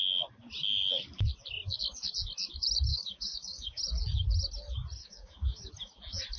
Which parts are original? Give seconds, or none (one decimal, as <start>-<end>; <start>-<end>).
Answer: 0.0-2.9; 3.8-5.0; 5.7-6.4